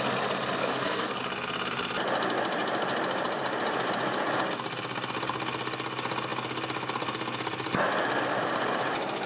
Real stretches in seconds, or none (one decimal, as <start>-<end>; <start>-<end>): 0.0-0.6; 1.2-9.3